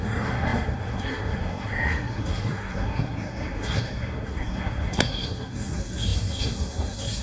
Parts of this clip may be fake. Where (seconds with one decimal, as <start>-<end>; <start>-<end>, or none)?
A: 0.0-7.2